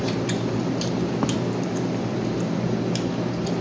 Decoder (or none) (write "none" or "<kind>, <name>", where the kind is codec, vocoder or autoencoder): none